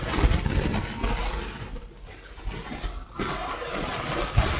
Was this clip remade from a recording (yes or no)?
no